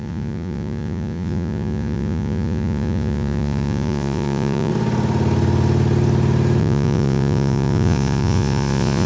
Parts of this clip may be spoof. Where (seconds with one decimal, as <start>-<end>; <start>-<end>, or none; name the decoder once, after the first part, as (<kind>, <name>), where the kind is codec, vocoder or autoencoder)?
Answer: 0.0-4.7 (vocoder, Vocos); 6.6-9.1